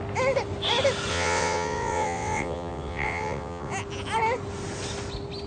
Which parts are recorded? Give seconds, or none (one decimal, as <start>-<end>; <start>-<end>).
0.0-1.1; 3.7-5.5

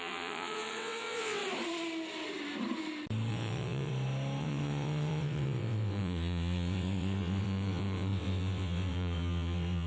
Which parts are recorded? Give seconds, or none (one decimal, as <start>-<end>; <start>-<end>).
1.4-3.3; 3.9-4.4

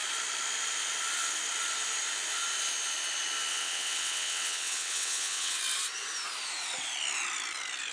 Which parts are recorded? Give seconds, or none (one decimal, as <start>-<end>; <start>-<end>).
0.0-3.5; 5.6-7.9